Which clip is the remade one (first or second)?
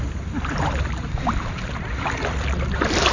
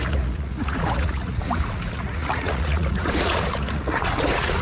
second